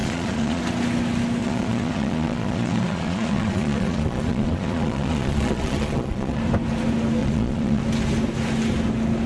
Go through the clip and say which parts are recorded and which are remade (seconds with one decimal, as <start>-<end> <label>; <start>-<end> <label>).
0.0-0.6 remade; 0.6-1.4 recorded; 1.4-6.4 remade; 6.4-7.2 recorded; 7.2-7.8 remade; 7.8-9.3 recorded